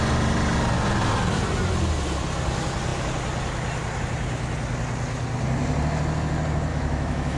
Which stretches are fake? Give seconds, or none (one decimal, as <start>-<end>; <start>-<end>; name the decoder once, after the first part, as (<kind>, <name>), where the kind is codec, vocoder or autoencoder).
6.7-7.4 (autoencoder, DAC-VAE)